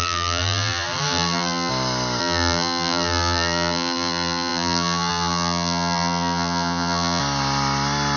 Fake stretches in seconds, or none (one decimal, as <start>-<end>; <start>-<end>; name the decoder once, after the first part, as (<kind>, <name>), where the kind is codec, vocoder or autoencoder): 0.0-1.7 (vocoder, BigVGAN v2); 2.2-7.2